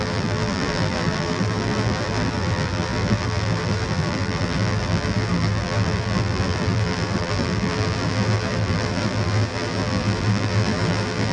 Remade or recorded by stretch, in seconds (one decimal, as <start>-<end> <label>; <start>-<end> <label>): 0.0-11.3 remade